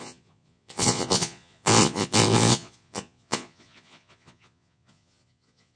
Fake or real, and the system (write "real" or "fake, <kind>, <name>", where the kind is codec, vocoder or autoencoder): fake, vocoder, Vocos